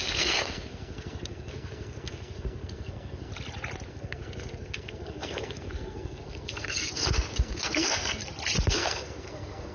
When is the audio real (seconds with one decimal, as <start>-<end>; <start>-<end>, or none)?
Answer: 3.3-3.9; 8.2-8.7